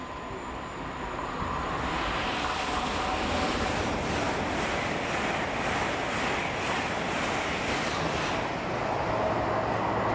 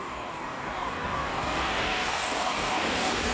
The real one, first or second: first